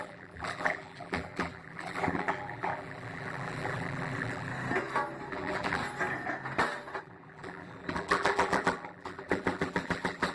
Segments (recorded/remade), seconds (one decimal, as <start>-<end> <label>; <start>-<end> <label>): 0.0-4.5 remade; 4.5-5.3 recorded; 5.3-5.8 remade; 5.8-7.0 recorded; 7.0-10.3 remade